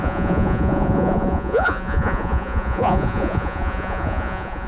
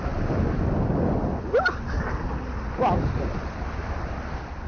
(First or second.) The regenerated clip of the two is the first